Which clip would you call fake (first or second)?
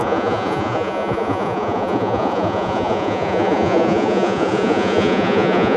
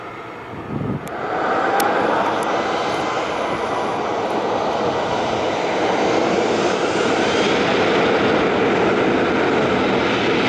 first